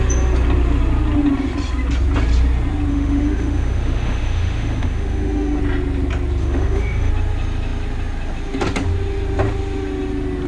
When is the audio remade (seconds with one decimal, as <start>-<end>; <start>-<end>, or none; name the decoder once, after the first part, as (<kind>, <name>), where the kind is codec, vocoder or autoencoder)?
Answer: 2.9-5.6 (autoencoder, DAC-VAE); 6.4-7.1